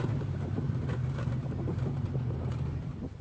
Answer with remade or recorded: remade